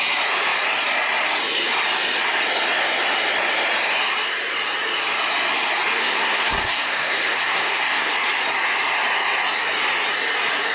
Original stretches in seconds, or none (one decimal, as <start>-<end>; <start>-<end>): 0.0-6.0; 8.1-10.7